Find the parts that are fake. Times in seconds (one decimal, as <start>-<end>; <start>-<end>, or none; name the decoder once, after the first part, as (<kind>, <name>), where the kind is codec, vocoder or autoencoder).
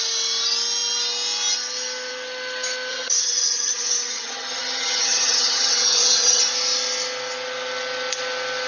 2.9-6.4 (vocoder, HiFi-GAN)